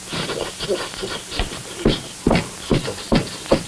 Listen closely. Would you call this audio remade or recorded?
recorded